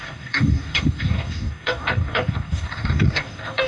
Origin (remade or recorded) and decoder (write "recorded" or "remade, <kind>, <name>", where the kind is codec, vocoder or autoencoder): remade, codec, DAC